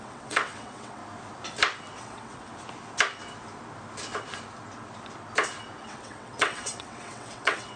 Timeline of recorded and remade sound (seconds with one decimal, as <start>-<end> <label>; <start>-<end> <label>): 0.0-1.0 remade; 1.0-2.0 recorded; 2.0-2.5 remade; 2.5-5.8 recorded; 5.8-7.8 remade